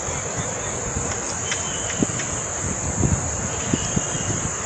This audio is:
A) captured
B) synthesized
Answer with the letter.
A